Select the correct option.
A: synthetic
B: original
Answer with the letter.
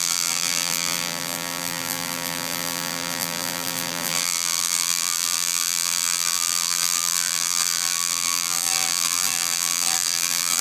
A